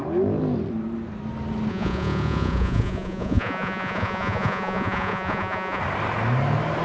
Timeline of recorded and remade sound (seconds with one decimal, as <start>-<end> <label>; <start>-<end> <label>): 0.0-1.7 recorded; 1.7-5.8 remade; 5.8-6.8 recorded